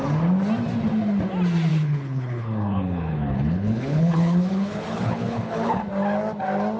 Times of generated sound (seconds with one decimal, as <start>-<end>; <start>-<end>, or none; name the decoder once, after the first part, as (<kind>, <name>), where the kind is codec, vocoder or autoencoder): 1.7-5.8 (codec, HILCodec)

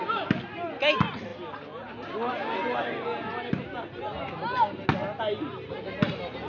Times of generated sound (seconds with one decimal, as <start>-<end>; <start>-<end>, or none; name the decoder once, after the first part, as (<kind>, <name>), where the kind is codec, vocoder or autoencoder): none

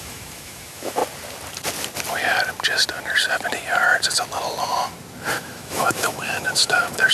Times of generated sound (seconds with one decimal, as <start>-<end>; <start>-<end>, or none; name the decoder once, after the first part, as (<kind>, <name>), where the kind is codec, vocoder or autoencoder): 0.0-1.0 (autoencoder, DAC-VAE); 5.3-7.1

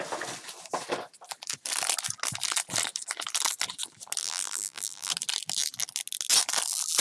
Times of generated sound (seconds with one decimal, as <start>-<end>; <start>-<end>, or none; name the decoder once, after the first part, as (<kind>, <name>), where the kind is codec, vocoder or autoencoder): 4.2-5.1 (vocoder, BigVGAN v2)

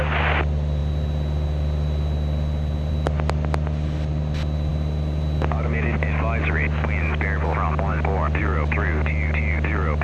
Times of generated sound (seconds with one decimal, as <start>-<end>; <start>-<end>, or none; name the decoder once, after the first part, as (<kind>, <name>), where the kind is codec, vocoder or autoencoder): none

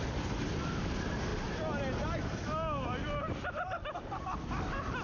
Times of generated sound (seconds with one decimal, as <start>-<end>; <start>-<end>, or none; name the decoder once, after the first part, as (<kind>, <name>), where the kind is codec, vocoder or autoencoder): none

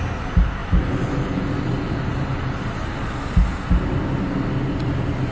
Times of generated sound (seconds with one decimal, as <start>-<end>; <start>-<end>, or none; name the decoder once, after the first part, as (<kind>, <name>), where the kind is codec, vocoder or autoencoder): none